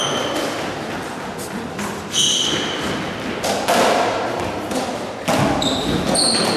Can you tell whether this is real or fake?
real